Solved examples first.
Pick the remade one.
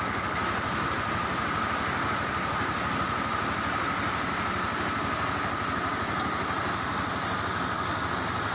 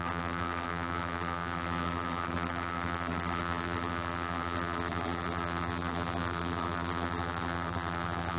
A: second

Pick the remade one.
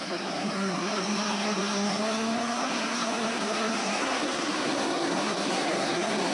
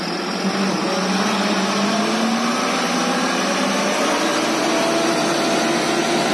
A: first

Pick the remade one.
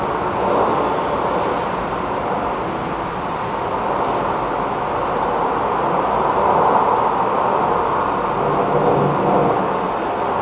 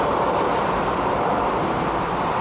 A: second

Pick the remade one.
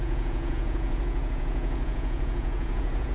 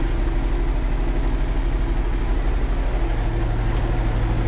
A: first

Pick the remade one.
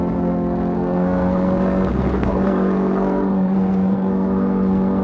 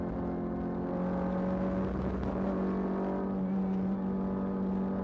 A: first